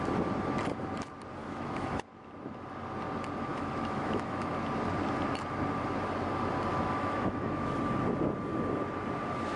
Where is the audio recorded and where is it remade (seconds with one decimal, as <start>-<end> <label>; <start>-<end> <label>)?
0.0-1.4 recorded; 1.4-2.0 remade; 2.0-3.5 recorded; 3.5-4.5 remade; 4.5-6.7 recorded; 6.7-7.8 remade; 7.8-9.6 recorded